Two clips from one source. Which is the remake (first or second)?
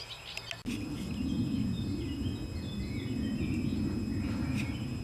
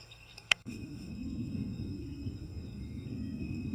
second